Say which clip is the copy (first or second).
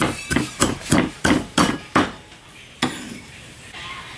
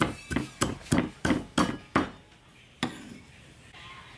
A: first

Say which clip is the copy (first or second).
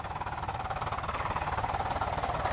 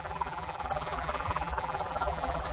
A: second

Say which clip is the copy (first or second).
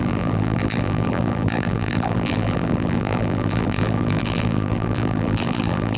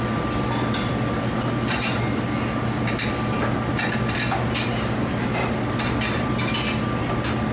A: first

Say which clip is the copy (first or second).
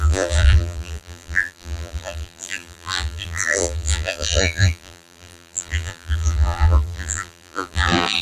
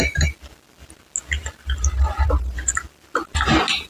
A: first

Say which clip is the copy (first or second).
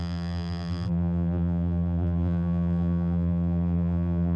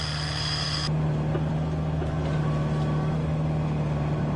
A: first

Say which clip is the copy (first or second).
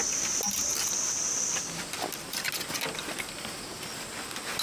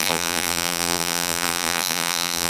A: second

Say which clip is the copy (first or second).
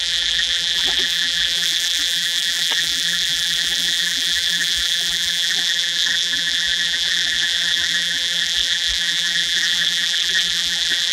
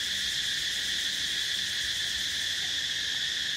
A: first